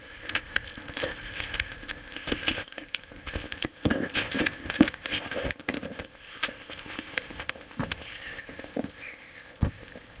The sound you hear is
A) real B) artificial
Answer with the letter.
B